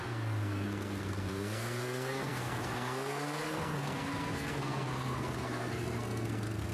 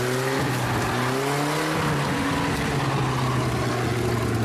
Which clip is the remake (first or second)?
first